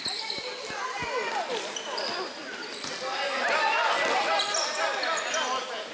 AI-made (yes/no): no